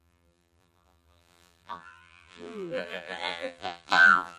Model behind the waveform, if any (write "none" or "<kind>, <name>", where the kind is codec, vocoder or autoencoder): vocoder, BigVGAN v2